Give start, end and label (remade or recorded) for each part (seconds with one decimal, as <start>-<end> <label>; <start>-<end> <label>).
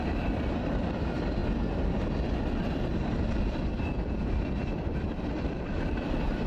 0.0-1.4 remade; 1.4-2.4 recorded; 2.4-6.5 remade